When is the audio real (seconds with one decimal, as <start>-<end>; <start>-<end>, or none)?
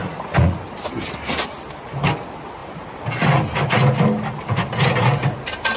0.6-5.8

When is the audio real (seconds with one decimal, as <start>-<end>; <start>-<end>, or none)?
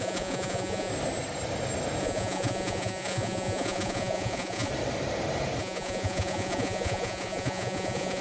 0.9-2.0; 4.7-5.6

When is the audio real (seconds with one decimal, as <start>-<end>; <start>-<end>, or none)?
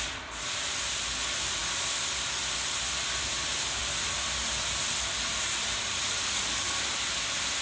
0.0-7.6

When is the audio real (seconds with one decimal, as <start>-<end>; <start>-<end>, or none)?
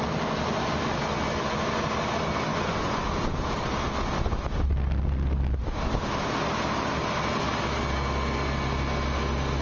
0.0-2.5; 3.0-9.6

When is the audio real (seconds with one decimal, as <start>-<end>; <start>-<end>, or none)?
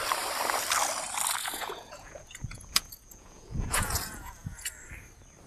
0.0-1.4; 4.7-5.5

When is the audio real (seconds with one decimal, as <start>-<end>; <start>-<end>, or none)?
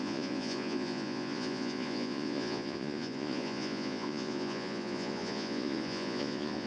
none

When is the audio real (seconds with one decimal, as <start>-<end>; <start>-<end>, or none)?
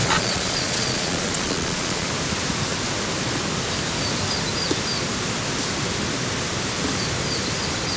2.1-8.0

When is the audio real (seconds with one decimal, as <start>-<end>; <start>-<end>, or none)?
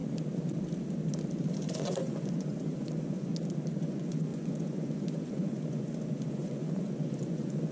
0.0-1.8; 3.3-3.8